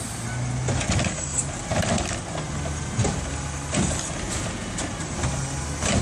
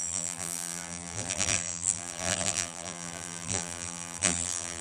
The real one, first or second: first